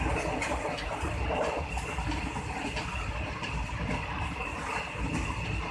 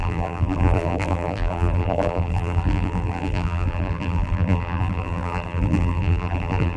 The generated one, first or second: second